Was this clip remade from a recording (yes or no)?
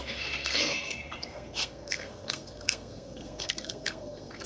yes